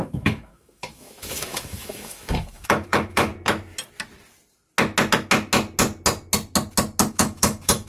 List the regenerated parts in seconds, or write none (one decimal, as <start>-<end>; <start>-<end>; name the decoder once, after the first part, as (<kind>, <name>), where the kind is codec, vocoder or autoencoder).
0.0-3.3 (autoencoder, DAC-VAE); 7.1-7.9